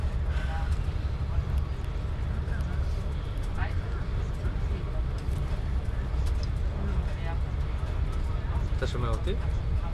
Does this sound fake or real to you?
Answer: real